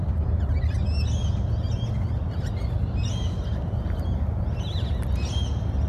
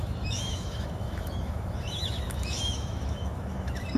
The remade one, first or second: second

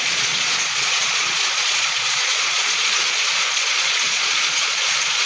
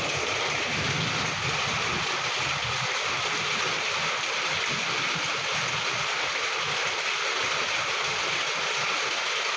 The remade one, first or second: first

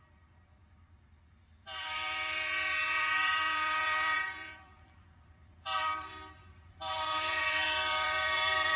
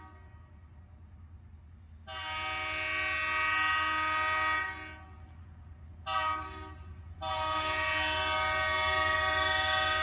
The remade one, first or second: first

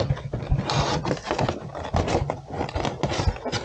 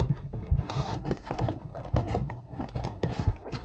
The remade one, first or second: second